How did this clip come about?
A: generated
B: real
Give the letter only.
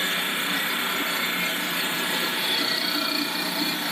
B